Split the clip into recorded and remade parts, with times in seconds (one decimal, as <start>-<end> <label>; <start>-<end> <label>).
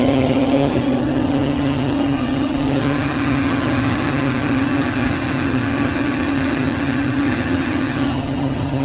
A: 0.0-8.8 remade